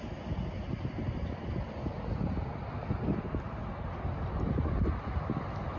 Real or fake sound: real